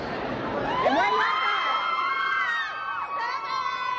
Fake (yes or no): yes